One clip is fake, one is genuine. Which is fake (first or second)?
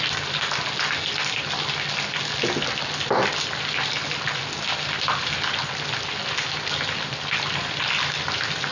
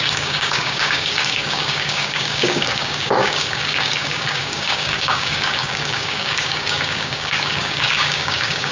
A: second